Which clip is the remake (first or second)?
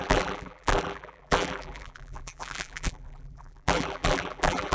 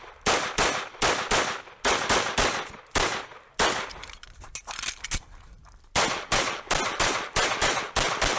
first